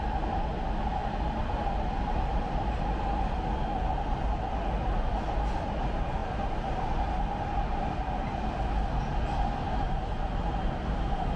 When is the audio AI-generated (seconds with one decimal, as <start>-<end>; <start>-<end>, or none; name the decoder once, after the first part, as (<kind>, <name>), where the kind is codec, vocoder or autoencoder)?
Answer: none